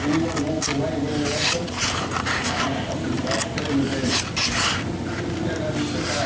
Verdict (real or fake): real